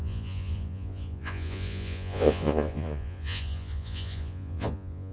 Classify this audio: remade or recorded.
remade